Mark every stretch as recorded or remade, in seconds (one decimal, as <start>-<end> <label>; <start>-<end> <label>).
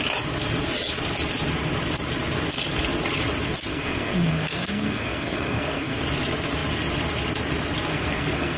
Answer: 0.0-3.7 recorded; 3.7-6.0 remade; 6.0-7.9 recorded; 7.9-8.6 remade